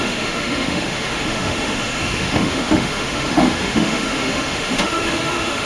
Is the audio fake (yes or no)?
yes